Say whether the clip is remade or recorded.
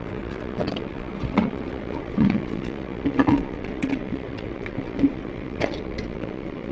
remade